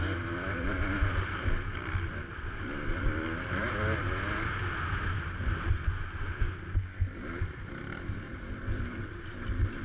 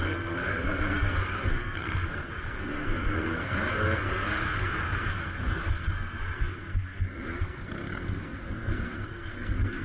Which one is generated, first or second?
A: second